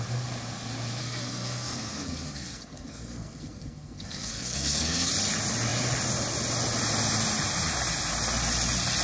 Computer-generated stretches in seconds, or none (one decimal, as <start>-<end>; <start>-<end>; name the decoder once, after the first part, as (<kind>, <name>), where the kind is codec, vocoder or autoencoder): 1.0-5.1 (codec, SNAC)